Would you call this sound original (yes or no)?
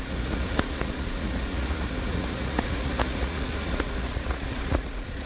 no